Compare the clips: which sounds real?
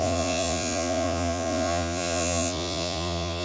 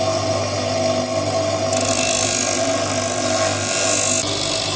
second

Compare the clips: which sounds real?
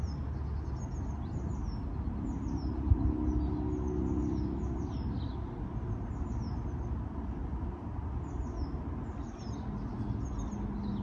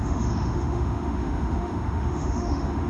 first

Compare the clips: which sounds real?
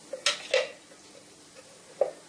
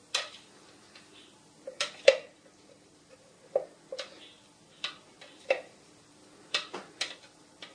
first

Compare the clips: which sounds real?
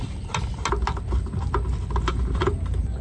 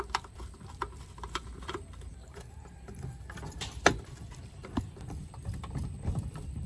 first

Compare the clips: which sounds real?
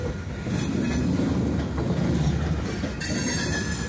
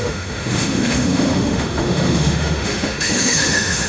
first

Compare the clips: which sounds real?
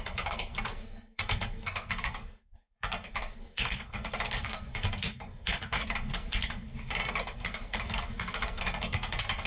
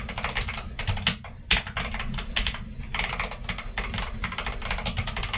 second